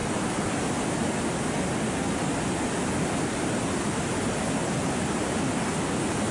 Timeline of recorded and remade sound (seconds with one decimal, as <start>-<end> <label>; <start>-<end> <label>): 0.0-6.3 recorded